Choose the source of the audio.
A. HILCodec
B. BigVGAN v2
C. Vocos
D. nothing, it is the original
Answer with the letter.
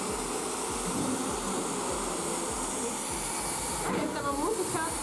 D